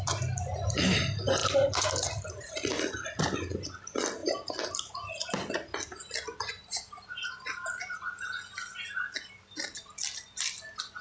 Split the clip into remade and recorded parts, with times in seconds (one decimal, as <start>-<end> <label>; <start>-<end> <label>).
0.0-11.0 recorded